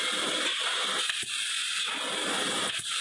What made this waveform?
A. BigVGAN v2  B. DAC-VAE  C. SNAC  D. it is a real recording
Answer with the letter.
D